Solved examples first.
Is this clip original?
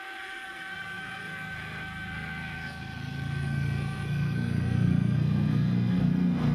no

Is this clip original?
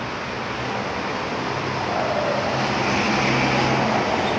yes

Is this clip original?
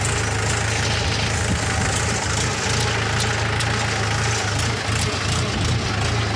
yes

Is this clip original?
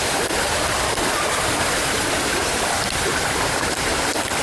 no